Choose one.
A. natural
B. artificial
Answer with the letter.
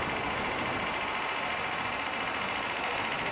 A